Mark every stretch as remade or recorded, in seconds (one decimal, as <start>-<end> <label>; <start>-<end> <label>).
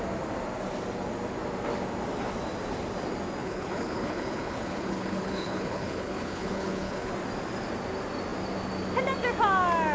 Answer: 0.0-3.4 recorded; 3.4-7.1 remade; 7.1-9.9 recorded